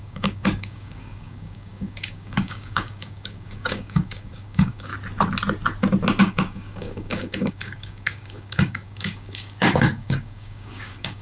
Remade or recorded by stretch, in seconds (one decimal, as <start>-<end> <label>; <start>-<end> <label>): 0.0-4.9 remade; 4.9-6.2 recorded; 6.2-11.2 remade